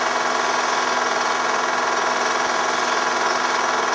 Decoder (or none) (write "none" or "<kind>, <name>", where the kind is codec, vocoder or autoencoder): none